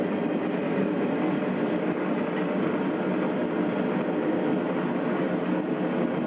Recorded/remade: recorded